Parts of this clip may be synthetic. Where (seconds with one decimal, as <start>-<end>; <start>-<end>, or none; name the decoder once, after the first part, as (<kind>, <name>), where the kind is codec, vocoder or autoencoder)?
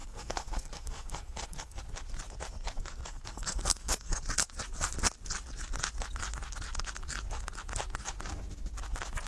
0.0-1.8 (codec, SNAC); 2.8-4.2